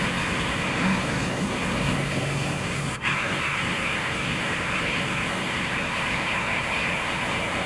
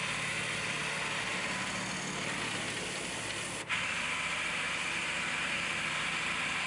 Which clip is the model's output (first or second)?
first